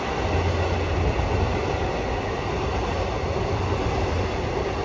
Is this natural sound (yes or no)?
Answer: yes